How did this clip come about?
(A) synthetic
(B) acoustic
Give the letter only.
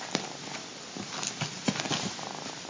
A